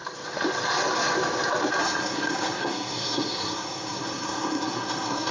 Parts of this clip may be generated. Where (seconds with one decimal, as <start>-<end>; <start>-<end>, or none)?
1.8-5.3